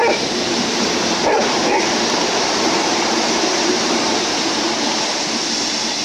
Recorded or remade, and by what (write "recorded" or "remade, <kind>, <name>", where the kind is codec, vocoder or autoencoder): recorded